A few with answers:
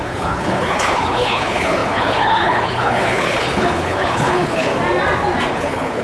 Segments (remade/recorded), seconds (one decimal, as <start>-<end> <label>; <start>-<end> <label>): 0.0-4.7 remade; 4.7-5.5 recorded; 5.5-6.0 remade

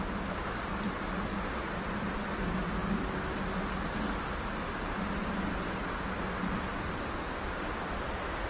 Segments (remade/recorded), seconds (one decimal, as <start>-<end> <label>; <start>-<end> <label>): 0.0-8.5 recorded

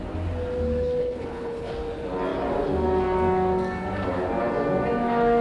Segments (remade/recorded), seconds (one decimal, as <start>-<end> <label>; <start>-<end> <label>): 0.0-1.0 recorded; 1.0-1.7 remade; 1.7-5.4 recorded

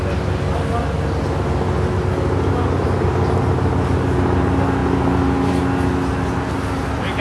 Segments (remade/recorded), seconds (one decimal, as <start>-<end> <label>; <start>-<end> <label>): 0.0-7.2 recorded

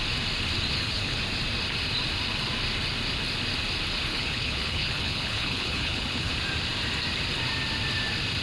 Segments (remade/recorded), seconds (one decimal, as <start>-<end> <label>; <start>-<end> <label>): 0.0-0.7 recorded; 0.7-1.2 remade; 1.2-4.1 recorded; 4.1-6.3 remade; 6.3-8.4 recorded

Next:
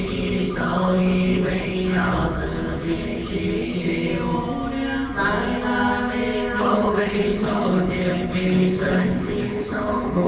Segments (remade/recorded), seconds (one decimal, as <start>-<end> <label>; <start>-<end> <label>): 0.0-4.1 remade; 4.1-6.6 recorded; 6.6-10.3 remade

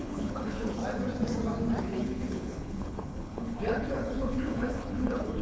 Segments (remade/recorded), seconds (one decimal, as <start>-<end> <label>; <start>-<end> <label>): 0.0-0.8 remade; 0.8-1.8 recorded; 1.8-5.4 remade

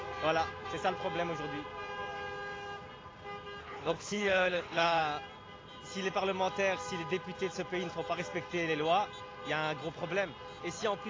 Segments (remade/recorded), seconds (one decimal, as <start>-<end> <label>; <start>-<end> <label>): 0.0-3.6 recorded; 3.6-5.0 remade; 5.0-11.1 recorded